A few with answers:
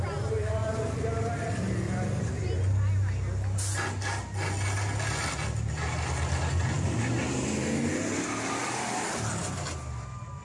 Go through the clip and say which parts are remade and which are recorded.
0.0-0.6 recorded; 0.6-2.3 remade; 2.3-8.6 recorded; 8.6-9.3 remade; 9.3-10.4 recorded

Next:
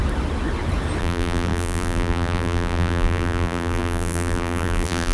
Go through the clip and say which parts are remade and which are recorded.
0.0-1.0 recorded; 1.0-5.1 remade

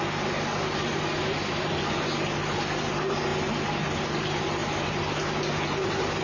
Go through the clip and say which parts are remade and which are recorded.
0.0-6.2 recorded

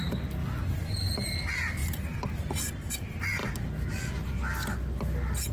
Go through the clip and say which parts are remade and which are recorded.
0.0-0.4 recorded; 0.4-1.3 remade; 1.3-5.5 recorded

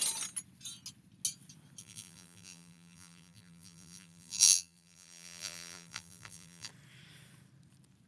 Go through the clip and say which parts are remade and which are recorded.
0.0-1.8 recorded; 1.8-6.7 remade; 6.7-8.1 recorded

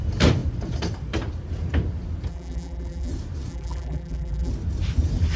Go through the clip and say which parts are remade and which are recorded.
0.0-2.3 recorded; 2.3-3.1 remade; 3.1-3.5 recorded; 3.5-4.5 remade; 4.5-5.4 recorded

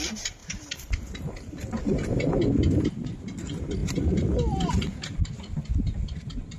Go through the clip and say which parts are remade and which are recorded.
0.0-0.4 recorded; 0.4-1.6 remade; 1.6-3.8 recorded; 3.8-5.3 remade; 5.3-6.6 recorded

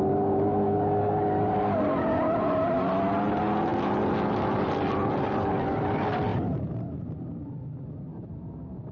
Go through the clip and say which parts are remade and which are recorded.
0.0-6.3 recorded; 6.3-7.3 remade; 7.3-8.9 recorded